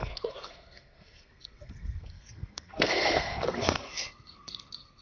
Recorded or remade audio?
remade